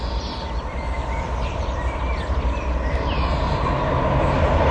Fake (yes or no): no